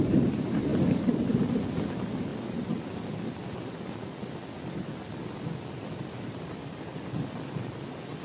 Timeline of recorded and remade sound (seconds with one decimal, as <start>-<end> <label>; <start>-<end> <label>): 0.0-8.2 recorded